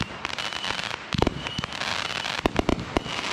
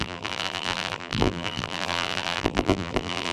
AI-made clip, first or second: second